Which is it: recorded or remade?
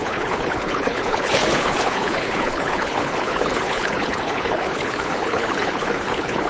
remade